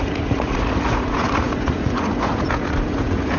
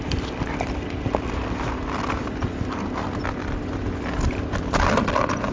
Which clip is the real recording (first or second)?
second